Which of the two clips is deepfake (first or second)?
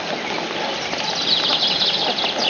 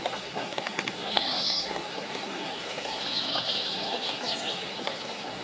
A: second